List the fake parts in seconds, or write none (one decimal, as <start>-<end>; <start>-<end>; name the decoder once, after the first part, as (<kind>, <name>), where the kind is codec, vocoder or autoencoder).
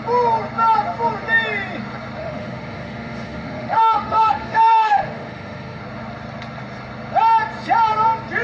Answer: 2.2-5.8 (autoencoder, DAC-VAE)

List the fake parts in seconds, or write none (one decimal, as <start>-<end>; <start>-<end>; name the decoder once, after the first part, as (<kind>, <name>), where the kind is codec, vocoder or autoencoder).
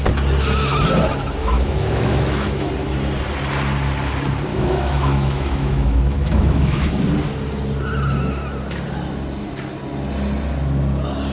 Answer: 1.4-2.7 (autoencoder, DAC-VAE); 4.5-7.0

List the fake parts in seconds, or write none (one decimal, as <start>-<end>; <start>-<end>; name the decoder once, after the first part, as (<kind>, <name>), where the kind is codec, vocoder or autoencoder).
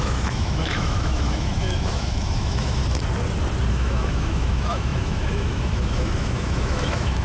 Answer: 0.0-2.8 (autoencoder, DAC-VAE); 3.7-7.2